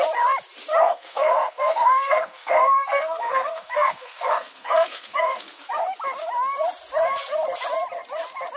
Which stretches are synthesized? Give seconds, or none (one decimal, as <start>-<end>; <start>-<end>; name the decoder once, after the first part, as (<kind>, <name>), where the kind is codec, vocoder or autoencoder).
0.8-5.7 (codec, SNAC)